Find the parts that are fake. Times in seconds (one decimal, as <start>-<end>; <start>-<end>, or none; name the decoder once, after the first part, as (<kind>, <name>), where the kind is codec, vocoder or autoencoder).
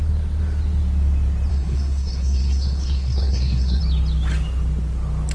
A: 1.5-3.8 (codec, SNAC)